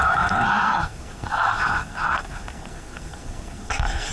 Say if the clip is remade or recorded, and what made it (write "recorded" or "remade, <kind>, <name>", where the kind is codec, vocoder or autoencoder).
remade, codec, SNAC